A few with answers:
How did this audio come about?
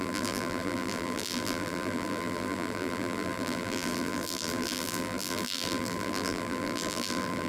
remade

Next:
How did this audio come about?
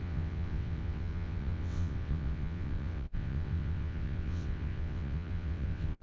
remade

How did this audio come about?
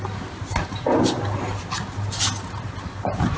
recorded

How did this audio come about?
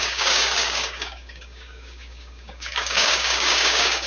remade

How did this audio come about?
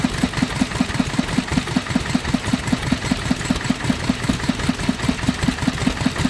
recorded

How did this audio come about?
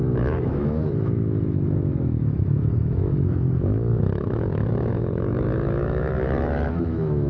remade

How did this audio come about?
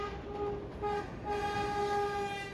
recorded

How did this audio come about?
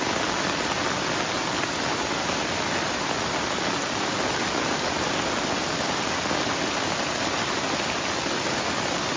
recorded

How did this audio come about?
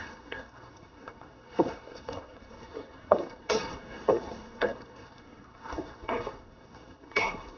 remade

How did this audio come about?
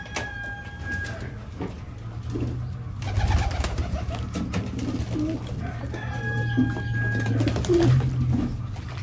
recorded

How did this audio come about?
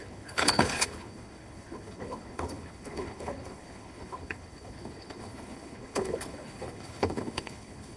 remade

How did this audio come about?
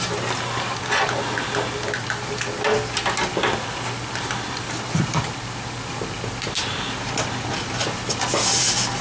recorded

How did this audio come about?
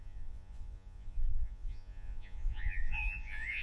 remade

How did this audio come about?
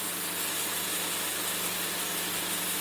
recorded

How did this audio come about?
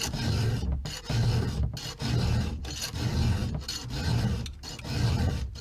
recorded